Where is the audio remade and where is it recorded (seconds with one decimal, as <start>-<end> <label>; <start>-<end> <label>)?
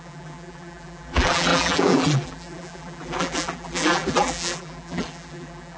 0.0-5.8 remade